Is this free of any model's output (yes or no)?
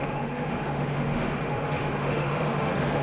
no